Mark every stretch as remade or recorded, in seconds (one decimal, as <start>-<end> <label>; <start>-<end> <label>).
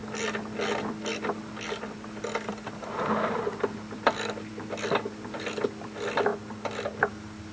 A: 0.0-7.5 recorded